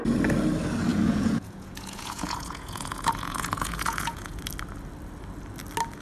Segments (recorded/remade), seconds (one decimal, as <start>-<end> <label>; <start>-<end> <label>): 0.0-0.9 recorded; 0.9-4.4 remade; 4.4-6.0 recorded